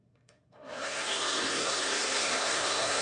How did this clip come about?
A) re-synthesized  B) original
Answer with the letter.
A